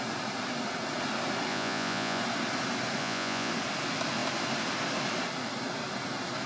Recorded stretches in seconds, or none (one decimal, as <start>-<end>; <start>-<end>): 0.0-1.5; 2.2-3.0; 3.5-6.5